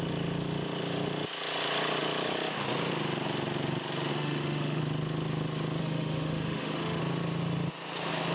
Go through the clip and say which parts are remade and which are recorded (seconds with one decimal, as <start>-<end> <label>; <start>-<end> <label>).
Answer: 0.0-4.1 recorded; 4.1-4.8 remade; 4.8-5.8 recorded; 5.8-7.0 remade; 7.0-8.3 recorded